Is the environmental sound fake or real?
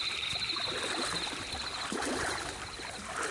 real